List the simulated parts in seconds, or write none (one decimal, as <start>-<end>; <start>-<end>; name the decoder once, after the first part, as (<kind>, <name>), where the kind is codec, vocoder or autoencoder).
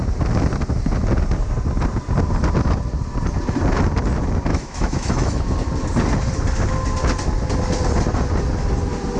4.5-5.4 (autoencoder, DAC-VAE)